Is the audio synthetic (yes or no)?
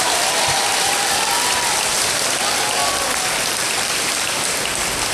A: no